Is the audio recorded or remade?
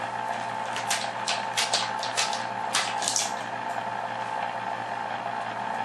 recorded